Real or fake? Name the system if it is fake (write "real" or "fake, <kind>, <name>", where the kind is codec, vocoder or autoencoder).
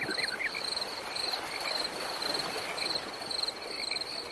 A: real